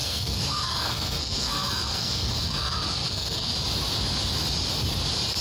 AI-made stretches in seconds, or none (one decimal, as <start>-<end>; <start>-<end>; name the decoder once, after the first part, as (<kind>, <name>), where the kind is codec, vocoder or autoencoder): 0.0-3.5 (codec, SNAC)